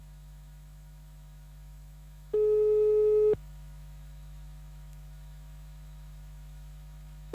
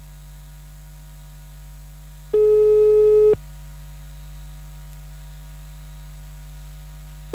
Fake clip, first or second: first